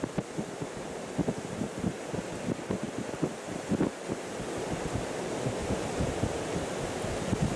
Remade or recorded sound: recorded